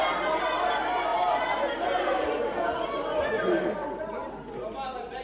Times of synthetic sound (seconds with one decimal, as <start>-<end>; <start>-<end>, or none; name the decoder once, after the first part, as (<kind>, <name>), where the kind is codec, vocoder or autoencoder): 4.2-5.2 (vocoder, BigVGAN v2)